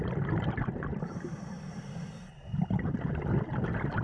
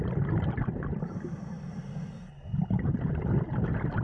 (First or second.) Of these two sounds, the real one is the second